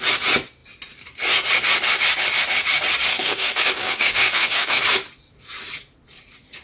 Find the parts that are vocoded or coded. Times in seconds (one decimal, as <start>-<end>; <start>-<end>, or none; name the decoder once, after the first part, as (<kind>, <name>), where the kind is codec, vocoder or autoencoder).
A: 3.1-4.8 (codec, DAC)